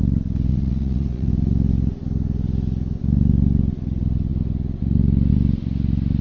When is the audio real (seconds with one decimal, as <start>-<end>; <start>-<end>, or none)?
0.0-0.5; 1.3-6.2